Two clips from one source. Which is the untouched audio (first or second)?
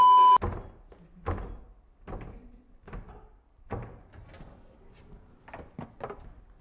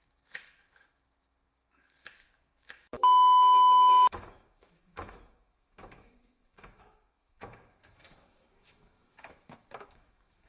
first